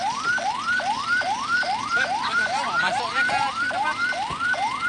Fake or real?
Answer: fake